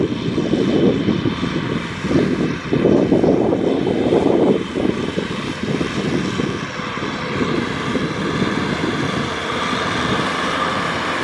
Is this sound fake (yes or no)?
yes